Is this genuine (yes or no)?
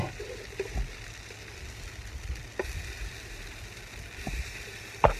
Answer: yes